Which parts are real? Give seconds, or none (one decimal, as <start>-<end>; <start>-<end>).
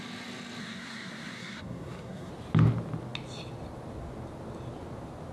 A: 0.0-0.6; 2.3-5.3